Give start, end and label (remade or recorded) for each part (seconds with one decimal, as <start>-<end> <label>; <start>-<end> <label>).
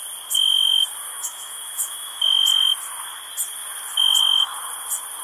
0.0-1.1 recorded; 1.1-2.2 remade; 2.2-5.2 recorded